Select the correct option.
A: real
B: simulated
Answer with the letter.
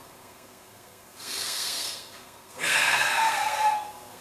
B